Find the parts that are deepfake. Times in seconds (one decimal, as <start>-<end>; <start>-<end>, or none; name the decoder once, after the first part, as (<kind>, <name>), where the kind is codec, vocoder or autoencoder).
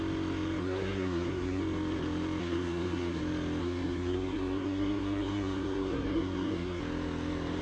0.6-1.6 (codec, SNAC); 2.4-3.2; 3.6-6.8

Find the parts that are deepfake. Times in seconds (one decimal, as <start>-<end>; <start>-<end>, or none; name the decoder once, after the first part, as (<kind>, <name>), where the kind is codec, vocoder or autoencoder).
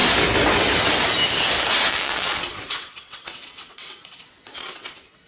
1.9-5.3 (vocoder, WaveNeXt)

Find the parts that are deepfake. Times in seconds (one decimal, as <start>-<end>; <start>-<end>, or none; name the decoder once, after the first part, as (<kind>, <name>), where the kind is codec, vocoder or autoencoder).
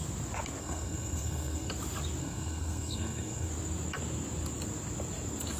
0.6-1.7 (codec, SNAC); 2.2-3.5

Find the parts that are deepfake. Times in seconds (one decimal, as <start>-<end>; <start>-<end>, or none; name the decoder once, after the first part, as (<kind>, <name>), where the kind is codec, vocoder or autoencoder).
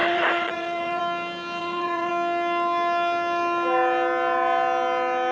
0.0-1.0 (vocoder, Vocos); 1.6-2.1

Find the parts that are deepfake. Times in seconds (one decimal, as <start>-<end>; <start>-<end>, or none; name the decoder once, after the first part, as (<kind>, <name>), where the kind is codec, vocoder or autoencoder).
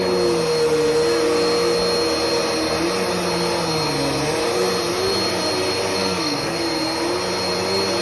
5.9-6.6 (codec, SNAC)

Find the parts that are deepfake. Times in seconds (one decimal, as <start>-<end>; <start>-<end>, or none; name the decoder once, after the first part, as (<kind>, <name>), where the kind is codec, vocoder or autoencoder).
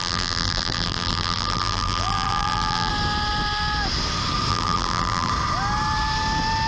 0.0-2.9 (vocoder, BigVGAN v2); 4.5-5.3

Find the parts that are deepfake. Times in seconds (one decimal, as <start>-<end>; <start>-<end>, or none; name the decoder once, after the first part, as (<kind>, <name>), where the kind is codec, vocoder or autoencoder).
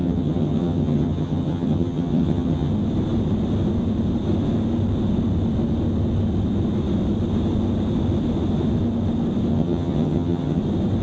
0.0-2.7 (vocoder, HiFi-GAN); 9.5-10.6